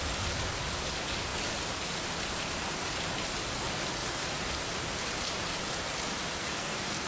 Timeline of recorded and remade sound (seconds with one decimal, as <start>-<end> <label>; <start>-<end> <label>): 0.0-6.4 recorded; 6.4-7.1 remade